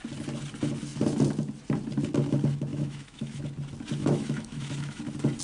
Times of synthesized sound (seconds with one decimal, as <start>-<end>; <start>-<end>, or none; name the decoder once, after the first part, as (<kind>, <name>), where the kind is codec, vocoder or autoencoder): 2.7-3.4 (autoencoder, DAC-VAE); 4.0-5.0